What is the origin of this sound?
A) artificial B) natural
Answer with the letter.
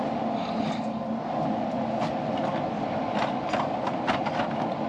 B